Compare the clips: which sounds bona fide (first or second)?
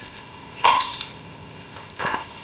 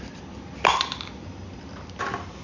second